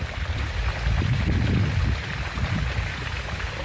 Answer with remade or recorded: recorded